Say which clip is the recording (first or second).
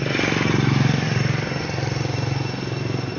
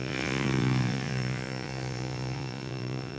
first